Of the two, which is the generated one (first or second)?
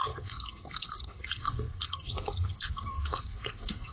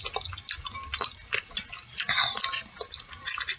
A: first